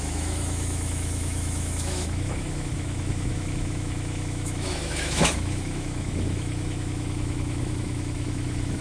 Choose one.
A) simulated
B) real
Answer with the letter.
A